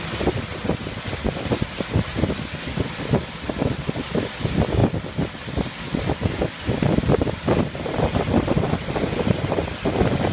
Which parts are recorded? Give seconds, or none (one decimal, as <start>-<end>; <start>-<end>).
0.0-10.3